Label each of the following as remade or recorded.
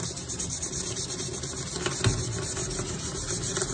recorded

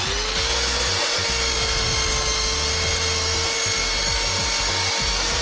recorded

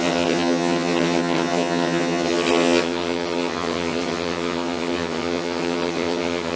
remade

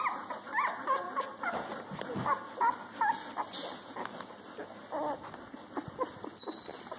recorded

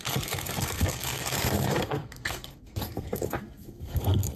remade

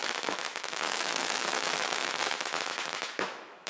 remade